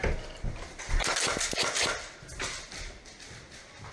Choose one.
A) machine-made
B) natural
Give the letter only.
B